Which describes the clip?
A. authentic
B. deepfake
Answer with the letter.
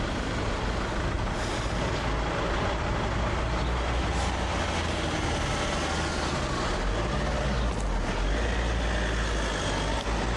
A